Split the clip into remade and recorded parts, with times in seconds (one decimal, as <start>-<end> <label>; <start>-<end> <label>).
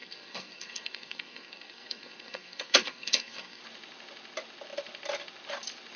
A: 0.0-3.6 remade; 3.6-6.0 recorded